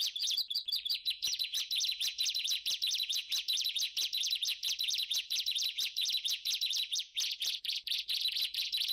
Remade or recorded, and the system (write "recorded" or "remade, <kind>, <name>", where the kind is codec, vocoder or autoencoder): remade, vocoder, Vocos